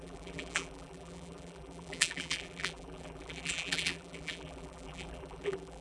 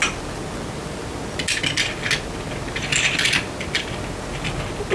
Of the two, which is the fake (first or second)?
first